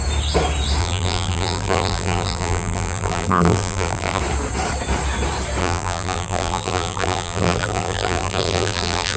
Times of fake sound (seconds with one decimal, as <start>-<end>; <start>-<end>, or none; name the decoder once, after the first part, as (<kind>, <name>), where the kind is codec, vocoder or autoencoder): 0.8-4.2 (vocoder, BigVGAN v2); 5.6-9.2